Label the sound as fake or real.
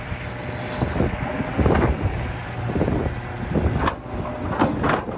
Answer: real